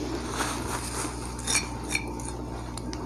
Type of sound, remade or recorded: recorded